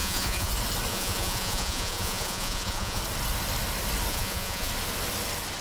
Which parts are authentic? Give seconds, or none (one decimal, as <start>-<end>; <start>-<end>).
0.5-0.9; 3.0-4.1; 4.7-5.6